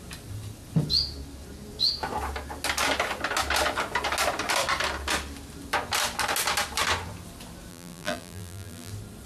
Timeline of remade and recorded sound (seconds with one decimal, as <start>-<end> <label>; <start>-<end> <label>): 0.0-7.7 recorded; 7.7-8.9 remade; 8.9-9.3 recorded